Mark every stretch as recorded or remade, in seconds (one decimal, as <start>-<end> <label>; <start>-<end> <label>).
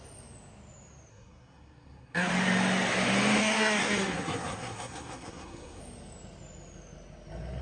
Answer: 0.0-1.1 recorded; 1.1-2.3 remade; 2.3-3.4 recorded; 3.4-5.8 remade; 5.8-7.6 recorded